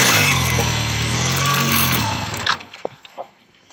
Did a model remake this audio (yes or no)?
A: yes